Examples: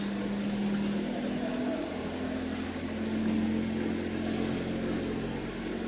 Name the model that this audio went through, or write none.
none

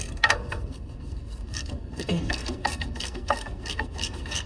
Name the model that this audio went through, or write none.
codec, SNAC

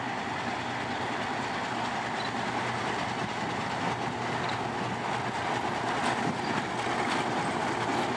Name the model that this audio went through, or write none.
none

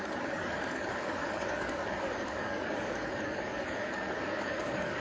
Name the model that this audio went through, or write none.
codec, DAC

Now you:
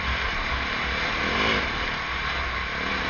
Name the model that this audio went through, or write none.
none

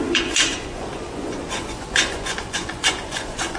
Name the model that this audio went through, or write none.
vocoder, Vocos